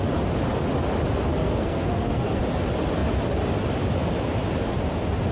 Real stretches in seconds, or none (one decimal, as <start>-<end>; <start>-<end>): 0.0-1.3; 2.4-5.3